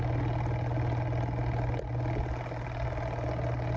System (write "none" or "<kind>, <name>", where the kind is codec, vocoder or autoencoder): none